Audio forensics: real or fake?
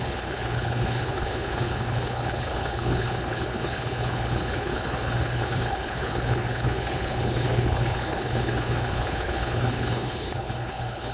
fake